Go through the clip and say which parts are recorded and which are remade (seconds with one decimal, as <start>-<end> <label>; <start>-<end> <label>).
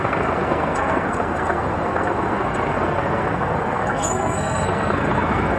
0.0-5.6 remade